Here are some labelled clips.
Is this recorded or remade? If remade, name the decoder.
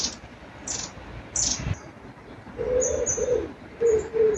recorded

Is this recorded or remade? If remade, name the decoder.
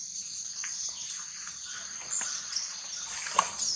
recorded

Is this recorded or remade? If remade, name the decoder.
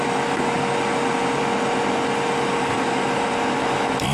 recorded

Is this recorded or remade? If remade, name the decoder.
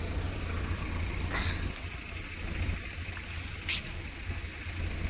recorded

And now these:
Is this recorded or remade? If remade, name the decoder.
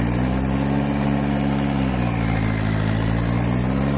recorded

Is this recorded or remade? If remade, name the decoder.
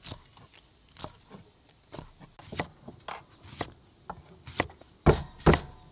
recorded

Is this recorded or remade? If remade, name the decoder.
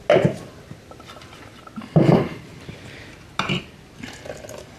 recorded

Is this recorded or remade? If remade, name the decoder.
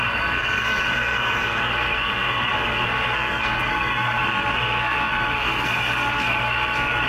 remade, codec, SNAC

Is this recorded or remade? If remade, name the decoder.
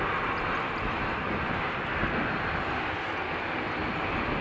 recorded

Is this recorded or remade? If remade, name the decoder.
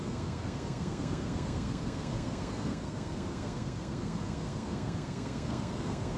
remade, codec, SNAC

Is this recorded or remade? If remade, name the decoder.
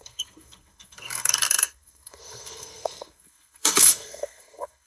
remade, codec, SNAC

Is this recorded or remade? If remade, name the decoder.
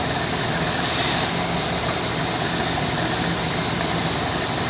recorded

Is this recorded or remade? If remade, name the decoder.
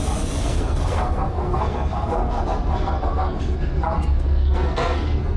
remade, codec, SNAC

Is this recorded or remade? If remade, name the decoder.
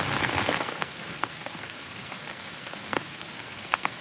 remade, codec, SNAC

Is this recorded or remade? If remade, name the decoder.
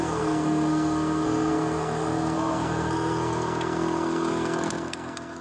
remade, codec, SNAC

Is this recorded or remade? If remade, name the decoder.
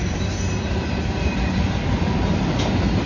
recorded